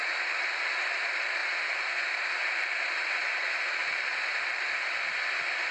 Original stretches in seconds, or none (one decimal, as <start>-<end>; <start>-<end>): 0.0-5.7